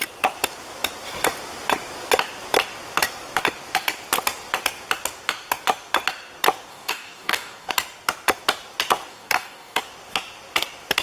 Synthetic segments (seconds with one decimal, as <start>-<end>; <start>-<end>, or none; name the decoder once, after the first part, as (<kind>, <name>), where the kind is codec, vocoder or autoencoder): 6.7-7.7 (codec, DAC); 9.1-9.8